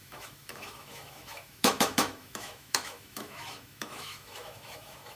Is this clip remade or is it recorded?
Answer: remade